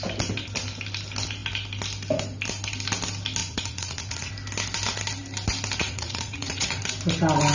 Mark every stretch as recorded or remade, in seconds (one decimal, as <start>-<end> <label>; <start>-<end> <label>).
0.0-3.4 recorded; 3.4-4.3 remade; 4.3-5.8 recorded; 5.8-6.8 remade; 6.8-7.5 recorded